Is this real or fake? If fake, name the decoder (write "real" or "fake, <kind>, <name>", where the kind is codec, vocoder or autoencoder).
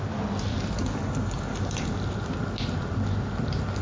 real